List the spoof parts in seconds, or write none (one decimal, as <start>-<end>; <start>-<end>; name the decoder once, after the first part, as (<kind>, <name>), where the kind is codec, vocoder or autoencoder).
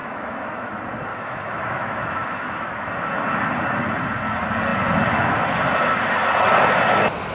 0.0-0.7 (autoencoder, DAC-VAE); 1.1-2.9